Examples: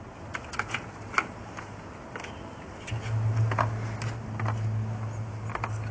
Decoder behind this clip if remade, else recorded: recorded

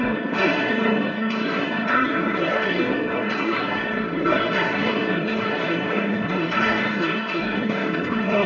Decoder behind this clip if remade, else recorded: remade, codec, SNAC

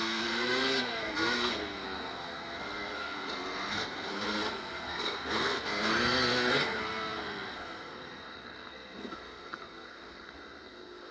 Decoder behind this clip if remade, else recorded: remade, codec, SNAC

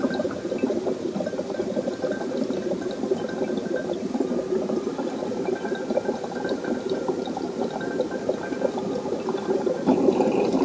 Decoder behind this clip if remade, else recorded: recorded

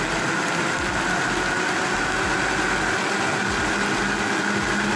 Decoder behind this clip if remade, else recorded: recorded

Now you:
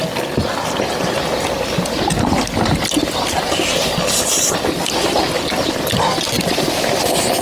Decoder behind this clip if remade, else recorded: recorded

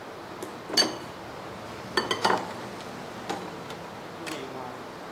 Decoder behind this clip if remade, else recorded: recorded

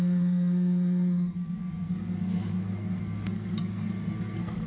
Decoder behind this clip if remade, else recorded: remade, codec, SNAC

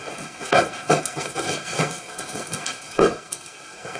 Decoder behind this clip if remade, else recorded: remade, codec, SNAC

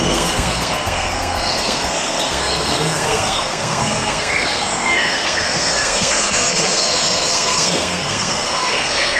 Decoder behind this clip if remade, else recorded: remade, codec, SNAC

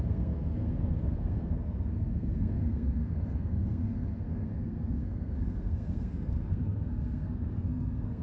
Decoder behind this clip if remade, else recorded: remade, codec, SNAC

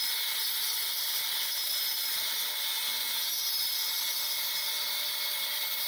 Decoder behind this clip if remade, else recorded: recorded